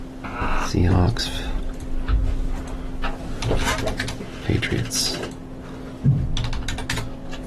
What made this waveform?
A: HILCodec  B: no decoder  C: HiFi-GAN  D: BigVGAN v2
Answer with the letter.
B